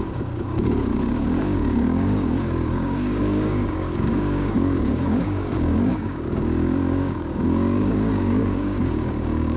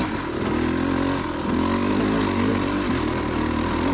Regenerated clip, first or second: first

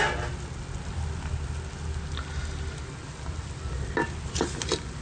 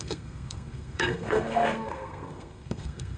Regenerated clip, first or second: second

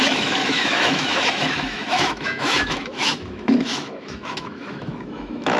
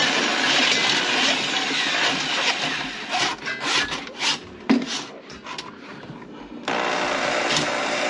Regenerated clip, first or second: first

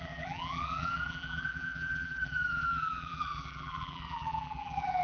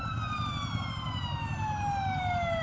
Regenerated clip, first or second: first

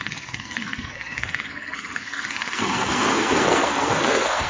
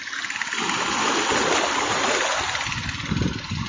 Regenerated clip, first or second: first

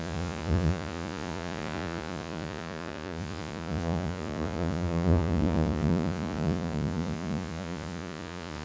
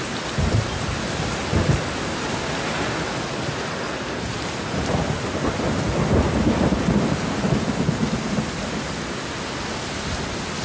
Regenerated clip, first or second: first